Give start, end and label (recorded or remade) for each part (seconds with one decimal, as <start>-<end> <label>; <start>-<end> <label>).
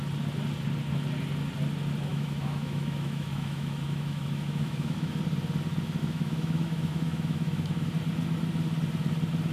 0.0-2.1 recorded; 2.1-5.2 remade; 5.2-6.0 recorded; 6.0-7.9 remade; 7.9-9.5 recorded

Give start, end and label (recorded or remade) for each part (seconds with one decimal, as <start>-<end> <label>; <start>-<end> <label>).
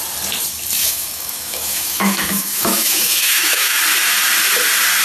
0.0-0.8 recorded; 0.8-3.8 remade; 3.8-5.0 recorded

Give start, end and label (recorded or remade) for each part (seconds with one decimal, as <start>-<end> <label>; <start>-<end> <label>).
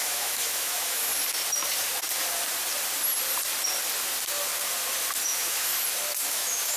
0.0-1.1 remade; 1.1-5.2 recorded; 5.2-5.7 remade; 5.7-6.3 recorded; 6.3-6.8 remade